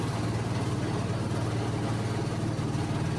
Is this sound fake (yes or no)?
no